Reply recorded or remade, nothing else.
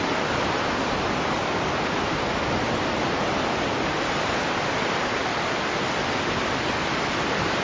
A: recorded